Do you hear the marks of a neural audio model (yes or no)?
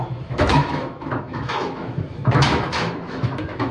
yes